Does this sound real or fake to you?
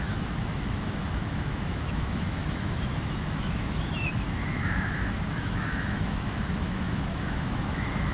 fake